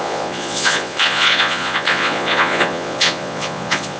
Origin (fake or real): fake